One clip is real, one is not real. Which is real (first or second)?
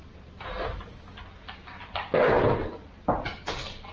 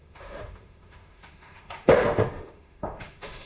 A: first